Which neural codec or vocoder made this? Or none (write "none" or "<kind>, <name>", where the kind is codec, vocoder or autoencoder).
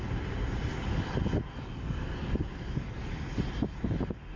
none